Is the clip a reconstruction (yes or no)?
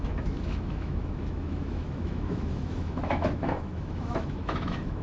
yes